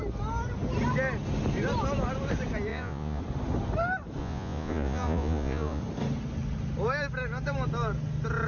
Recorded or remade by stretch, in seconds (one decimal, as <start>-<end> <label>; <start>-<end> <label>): 0.0-2.7 recorded; 2.7-3.2 remade; 3.2-4.2 recorded; 4.2-5.8 remade; 5.8-8.5 recorded